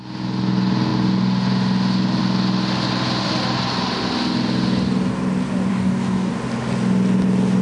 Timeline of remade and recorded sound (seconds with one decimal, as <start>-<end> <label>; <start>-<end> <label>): 0.0-5.7 recorded; 5.7-6.3 remade; 6.3-7.6 recorded